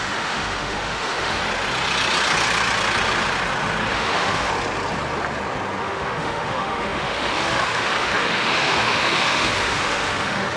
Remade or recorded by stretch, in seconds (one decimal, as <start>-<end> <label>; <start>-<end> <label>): 0.0-1.4 remade; 1.4-3.9 recorded; 3.9-4.5 remade; 4.5-5.8 recorded; 5.8-10.6 remade